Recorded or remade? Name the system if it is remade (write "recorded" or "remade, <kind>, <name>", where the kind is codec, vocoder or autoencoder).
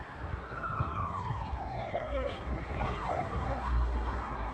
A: remade, codec, SNAC